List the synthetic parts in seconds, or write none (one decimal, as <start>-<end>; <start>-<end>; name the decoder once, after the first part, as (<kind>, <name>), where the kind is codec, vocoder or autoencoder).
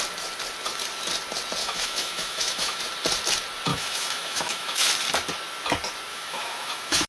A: 1.6-2.8 (autoencoder, DAC-VAE); 3.7-4.9; 6.1-7.1